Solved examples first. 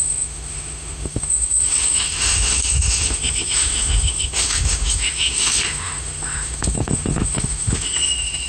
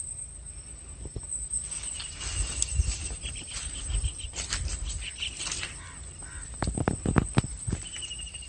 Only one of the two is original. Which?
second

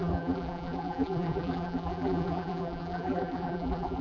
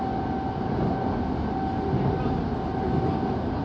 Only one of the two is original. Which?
second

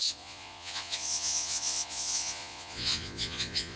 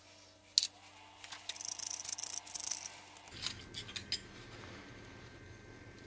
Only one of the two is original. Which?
second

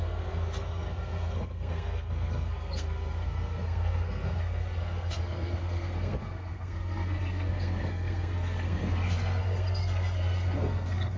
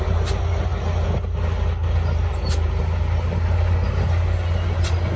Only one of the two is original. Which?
second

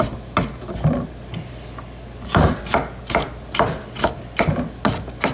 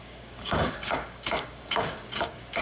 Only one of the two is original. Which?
first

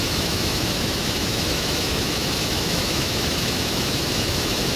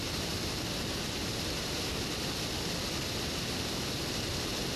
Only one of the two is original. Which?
second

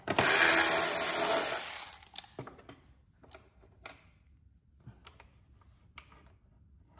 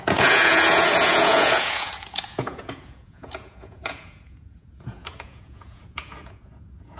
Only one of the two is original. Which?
first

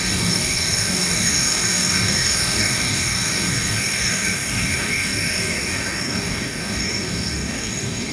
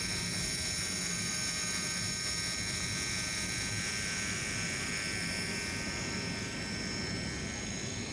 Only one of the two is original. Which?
second